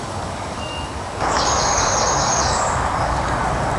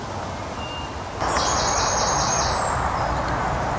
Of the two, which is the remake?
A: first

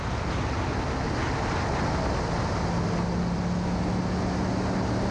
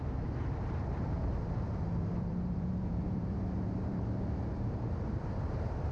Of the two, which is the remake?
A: second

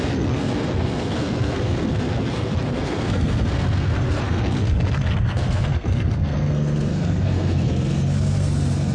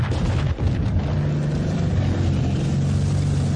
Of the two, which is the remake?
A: first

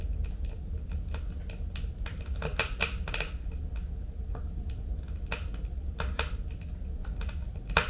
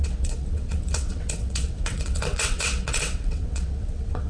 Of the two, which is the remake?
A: second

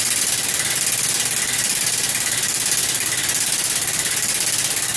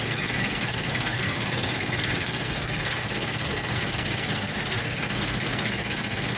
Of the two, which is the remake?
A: second